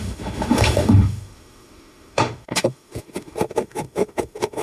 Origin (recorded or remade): remade